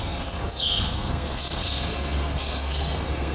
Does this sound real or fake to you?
fake